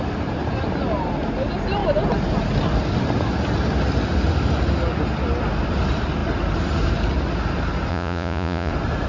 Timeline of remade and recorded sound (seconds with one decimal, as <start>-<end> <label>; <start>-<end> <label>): 0.0-7.9 recorded; 7.9-8.7 remade; 8.7-9.1 recorded

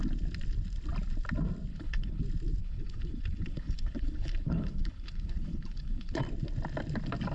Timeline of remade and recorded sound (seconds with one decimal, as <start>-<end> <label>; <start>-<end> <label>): 0.0-1.7 recorded; 1.7-2.2 remade; 2.2-2.6 recorded; 2.6-6.2 remade; 6.2-7.3 recorded

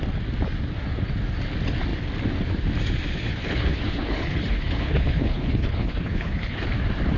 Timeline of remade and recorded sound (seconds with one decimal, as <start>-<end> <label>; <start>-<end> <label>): 0.0-3.3 recorded; 3.3-6.7 remade; 6.7-7.2 recorded